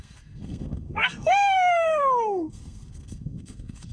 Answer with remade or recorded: remade